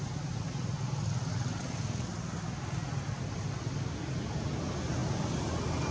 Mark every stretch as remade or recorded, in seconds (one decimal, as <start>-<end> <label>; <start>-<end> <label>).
0.0-5.9 recorded